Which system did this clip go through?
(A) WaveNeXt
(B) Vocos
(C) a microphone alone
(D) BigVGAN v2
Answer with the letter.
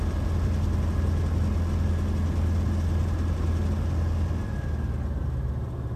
C